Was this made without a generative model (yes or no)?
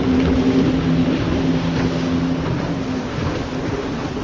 yes